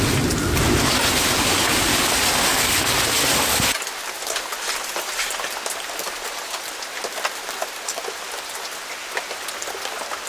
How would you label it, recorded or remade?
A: recorded